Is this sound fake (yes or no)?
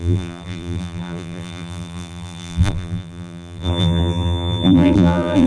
yes